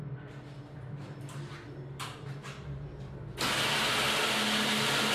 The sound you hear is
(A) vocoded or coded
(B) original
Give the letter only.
B